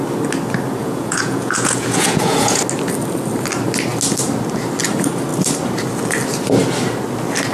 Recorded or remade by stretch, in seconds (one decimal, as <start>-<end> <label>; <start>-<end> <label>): 0.0-0.8 recorded; 0.8-2.6 remade; 2.6-7.5 recorded